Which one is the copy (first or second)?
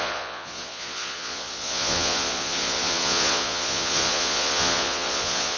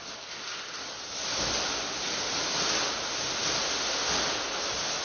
first